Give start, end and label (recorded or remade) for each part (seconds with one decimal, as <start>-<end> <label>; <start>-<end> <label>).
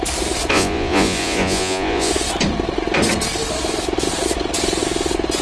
0.0-0.5 recorded; 0.5-2.1 remade; 2.1-5.4 recorded